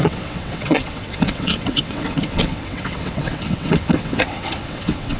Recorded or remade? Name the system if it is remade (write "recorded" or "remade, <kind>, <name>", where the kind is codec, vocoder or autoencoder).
remade, vocoder, WaveNeXt